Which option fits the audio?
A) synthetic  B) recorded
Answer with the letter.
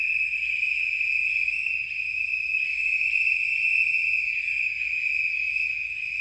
B